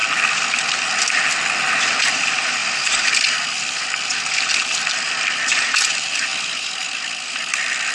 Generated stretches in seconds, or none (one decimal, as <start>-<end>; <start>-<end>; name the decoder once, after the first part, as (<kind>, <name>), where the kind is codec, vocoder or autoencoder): 2.1-2.6 (vocoder, BigVGAN v2); 4.9-6.3; 7.5-7.9